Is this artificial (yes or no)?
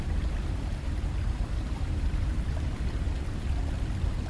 yes